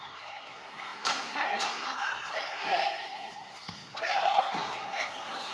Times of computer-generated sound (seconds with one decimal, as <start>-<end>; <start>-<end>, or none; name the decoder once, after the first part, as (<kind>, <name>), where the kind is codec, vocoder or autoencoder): 0.0-5.5 (codec, SNAC)